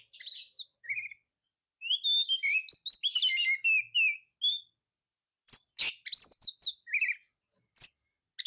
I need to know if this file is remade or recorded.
recorded